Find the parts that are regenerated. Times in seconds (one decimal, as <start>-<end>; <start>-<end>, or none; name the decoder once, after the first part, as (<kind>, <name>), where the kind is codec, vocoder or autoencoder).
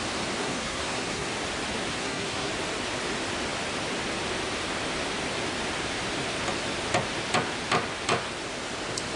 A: 0.4-1.3 (codec, SNAC); 1.9-2.5